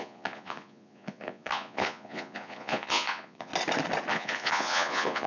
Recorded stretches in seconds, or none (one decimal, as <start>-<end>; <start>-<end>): 3.5-4.1